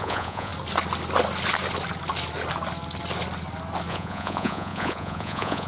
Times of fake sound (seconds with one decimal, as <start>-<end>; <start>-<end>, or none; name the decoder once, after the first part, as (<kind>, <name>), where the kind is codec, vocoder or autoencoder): 0.0-0.5 (vocoder, Vocos); 3.9-5.7

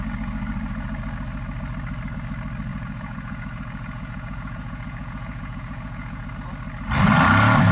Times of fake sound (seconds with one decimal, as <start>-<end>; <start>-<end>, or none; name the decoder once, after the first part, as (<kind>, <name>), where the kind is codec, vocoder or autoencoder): 2.7-6.3 (vocoder, Vocos)

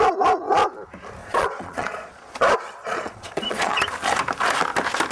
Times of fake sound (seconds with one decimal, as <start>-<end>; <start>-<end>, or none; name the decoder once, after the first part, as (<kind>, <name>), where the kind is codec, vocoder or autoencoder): 1.2-2.3 (vocoder, Vocos); 2.8-3.8